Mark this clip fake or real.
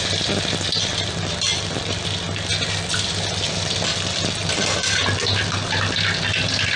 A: real